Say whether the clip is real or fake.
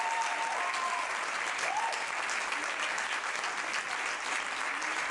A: real